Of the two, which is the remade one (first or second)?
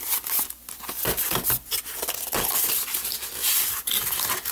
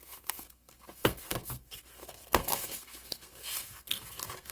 second